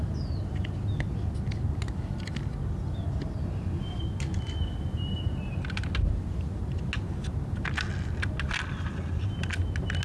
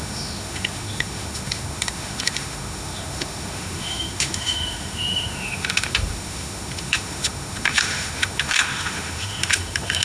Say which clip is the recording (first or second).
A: first